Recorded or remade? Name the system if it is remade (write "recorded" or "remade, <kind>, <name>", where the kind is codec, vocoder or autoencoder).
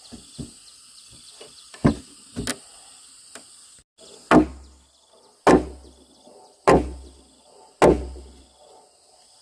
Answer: recorded